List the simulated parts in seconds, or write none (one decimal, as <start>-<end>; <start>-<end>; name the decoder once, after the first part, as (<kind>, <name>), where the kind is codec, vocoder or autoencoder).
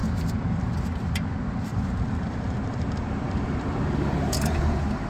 1.7-5.1 (vocoder, BigVGAN v2)